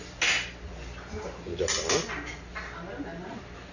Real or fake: real